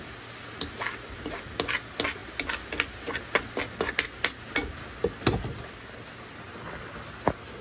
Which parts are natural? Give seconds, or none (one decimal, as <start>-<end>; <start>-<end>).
0.0-7.6